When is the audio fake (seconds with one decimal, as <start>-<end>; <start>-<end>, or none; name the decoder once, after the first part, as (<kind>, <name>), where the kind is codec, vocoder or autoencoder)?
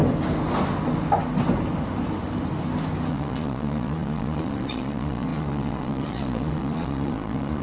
3.1-7.6 (vocoder, Vocos)